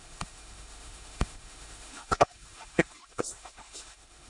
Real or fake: fake